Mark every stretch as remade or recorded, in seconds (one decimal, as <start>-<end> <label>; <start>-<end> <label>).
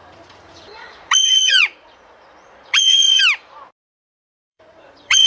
0.0-3.2 remade; 3.2-4.5 recorded; 4.5-5.3 remade